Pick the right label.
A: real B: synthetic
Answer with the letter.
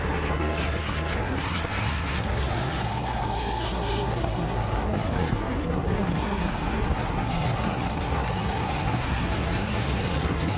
B